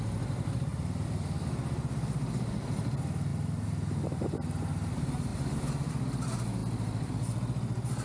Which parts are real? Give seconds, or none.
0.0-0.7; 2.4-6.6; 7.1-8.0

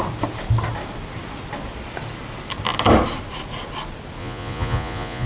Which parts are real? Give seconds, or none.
0.0-4.2

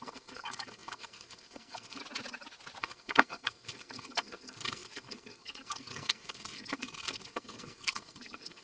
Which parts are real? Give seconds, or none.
2.0-2.8

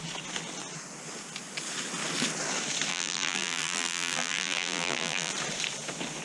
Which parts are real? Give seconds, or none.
0.0-2.9; 5.3-6.2